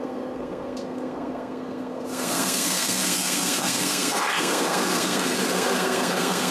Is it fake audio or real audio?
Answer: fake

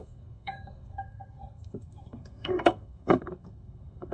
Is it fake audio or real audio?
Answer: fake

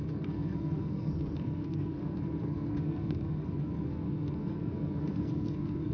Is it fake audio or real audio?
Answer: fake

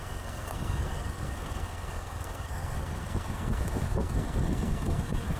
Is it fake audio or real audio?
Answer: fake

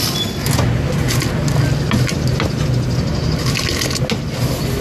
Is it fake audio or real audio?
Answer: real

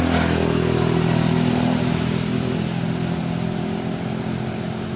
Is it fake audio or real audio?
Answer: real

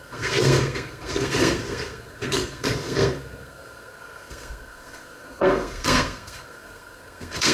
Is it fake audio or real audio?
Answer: fake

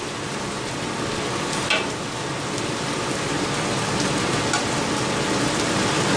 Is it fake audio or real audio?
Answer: real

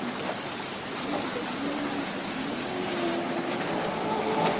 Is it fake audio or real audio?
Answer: real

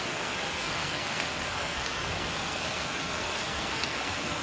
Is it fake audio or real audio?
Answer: fake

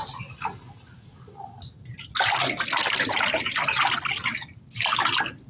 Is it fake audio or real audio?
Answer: real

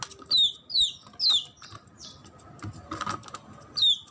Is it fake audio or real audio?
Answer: real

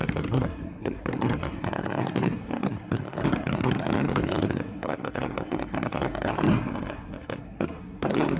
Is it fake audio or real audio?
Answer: fake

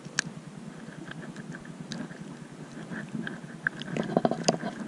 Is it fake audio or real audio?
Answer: real